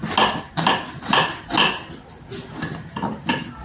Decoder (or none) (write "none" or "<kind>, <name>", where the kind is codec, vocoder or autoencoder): none